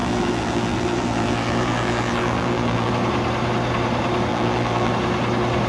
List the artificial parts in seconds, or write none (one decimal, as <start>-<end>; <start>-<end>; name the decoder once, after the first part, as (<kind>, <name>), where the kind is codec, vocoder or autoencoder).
0.0-2.9 (vocoder, BigVGAN v2); 4.3-4.9